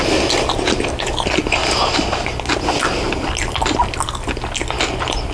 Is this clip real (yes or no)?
yes